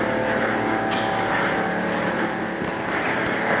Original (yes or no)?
yes